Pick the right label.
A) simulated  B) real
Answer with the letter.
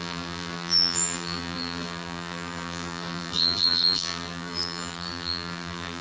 A